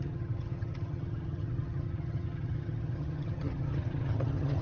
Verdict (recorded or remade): remade